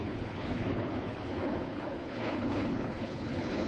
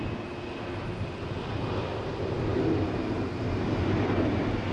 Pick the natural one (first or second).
second